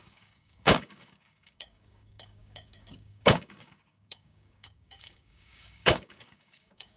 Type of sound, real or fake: fake